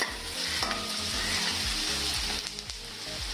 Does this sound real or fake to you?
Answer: real